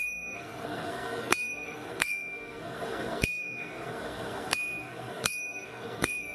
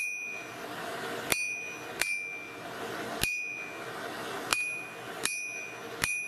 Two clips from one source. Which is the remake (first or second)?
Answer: first